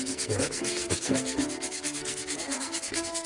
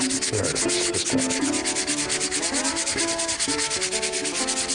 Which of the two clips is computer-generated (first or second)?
first